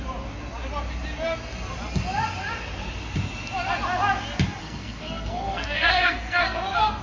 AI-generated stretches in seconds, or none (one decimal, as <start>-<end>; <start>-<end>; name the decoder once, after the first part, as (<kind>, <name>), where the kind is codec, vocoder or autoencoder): 4.6-7.0 (codec, SNAC)